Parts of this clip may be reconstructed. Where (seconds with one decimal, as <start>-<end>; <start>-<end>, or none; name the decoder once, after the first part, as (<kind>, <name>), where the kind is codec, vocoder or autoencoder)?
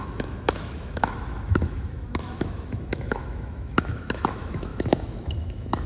0.0-5.9 (autoencoder, DAC-VAE)